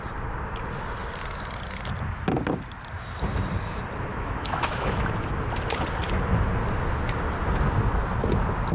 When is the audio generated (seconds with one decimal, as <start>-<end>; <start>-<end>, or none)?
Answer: 4.1-5.3